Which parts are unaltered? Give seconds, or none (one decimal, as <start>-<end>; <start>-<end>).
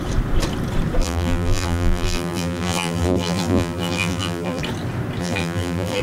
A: 0.0-1.0; 4.6-5.2